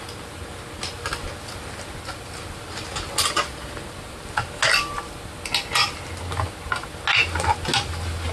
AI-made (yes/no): no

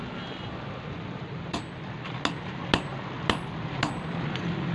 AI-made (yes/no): no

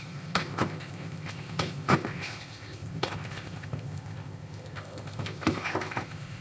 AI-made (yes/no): yes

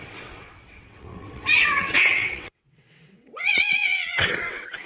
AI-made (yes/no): yes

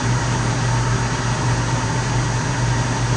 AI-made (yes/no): no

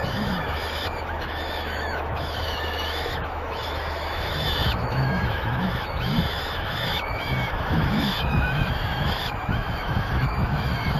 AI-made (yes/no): yes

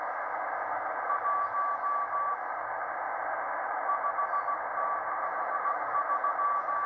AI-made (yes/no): no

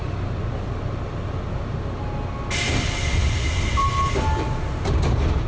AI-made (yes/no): no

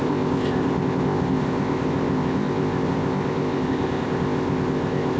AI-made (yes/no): yes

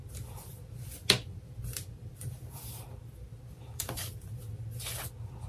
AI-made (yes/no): no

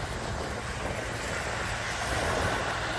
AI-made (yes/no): no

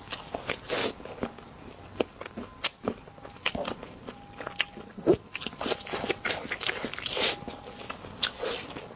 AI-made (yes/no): no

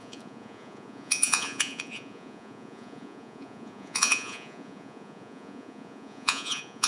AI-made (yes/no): yes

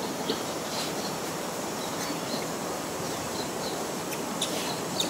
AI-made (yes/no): yes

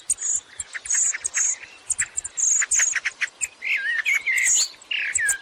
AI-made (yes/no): no